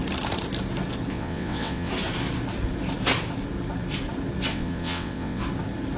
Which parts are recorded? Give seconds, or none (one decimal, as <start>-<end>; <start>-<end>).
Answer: 0.0-1.1; 1.9-4.5; 5.4-6.0